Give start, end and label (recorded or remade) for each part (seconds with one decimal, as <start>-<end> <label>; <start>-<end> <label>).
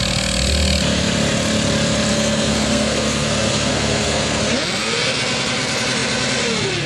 0.0-2.1 recorded; 2.1-4.4 remade; 4.4-6.9 recorded